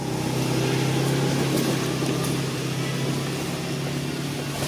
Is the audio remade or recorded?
recorded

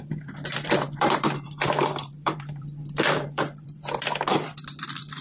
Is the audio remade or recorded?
remade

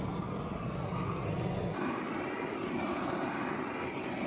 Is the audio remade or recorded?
recorded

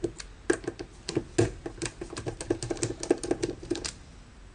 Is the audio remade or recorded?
recorded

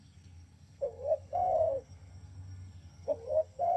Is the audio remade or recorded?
remade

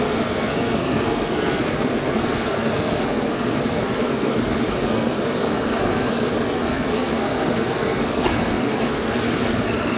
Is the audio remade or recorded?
remade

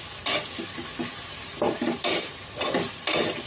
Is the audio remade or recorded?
remade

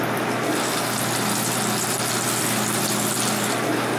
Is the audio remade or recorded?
recorded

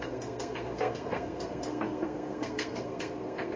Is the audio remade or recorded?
remade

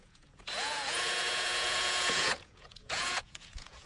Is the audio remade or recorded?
remade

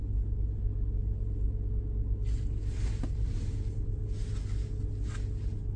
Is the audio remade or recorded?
recorded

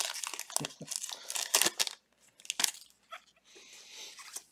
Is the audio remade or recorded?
recorded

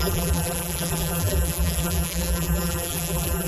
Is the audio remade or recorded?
remade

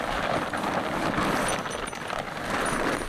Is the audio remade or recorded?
recorded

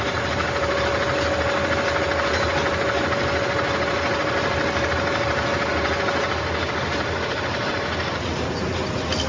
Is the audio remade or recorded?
recorded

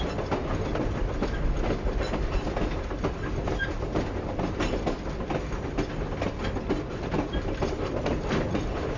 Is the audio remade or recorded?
recorded